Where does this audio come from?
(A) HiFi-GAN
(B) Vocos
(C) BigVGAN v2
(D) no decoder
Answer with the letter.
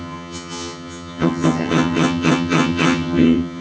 A